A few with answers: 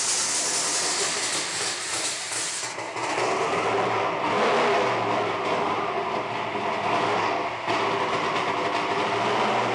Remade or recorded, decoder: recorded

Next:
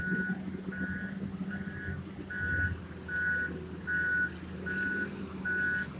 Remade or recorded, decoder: recorded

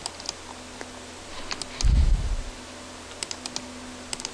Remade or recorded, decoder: recorded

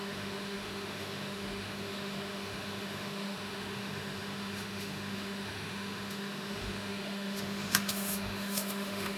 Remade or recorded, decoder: remade, autoencoder, DAC-VAE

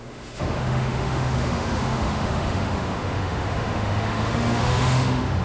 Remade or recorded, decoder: remade, autoencoder, DAC-VAE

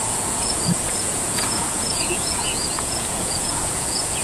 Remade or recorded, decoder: remade, vocoder, Vocos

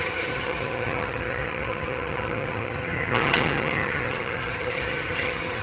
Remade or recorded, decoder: remade, vocoder, HiFi-GAN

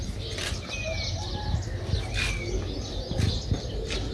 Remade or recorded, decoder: recorded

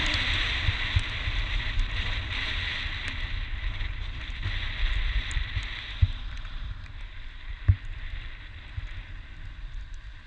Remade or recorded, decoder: remade, vocoder, BigVGAN v2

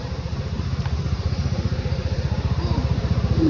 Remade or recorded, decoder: remade, vocoder, BigVGAN v2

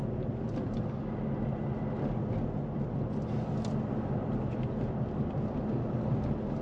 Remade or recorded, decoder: recorded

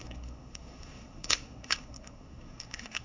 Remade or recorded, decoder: remade, codec, SNAC